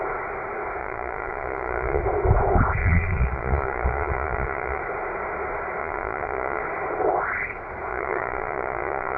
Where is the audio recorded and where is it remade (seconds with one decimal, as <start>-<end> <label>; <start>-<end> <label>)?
0.0-0.8 recorded; 0.8-2.0 remade; 2.0-2.8 recorded; 2.8-4.8 remade; 4.8-5.8 recorded; 5.8-6.6 remade; 6.6-7.9 recorded; 7.9-9.2 remade

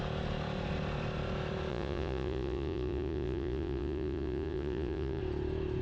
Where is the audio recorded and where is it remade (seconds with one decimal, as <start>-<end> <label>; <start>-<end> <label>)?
0.0-1.7 recorded; 1.7-5.2 remade; 5.2-5.8 recorded

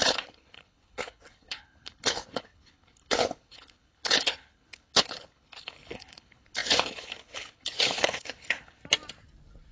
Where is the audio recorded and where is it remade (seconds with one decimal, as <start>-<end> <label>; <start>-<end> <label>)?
0.0-8.8 remade; 8.8-9.7 recorded

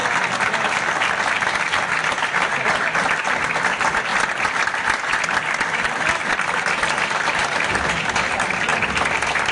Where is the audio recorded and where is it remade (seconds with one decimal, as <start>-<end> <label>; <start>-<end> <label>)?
0.0-9.5 recorded

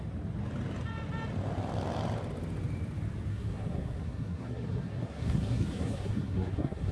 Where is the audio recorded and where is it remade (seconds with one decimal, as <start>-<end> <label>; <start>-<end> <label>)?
0.0-3.3 recorded; 3.3-6.9 remade

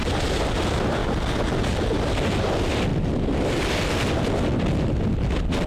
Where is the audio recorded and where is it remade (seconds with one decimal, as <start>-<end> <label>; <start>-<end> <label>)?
0.0-5.7 recorded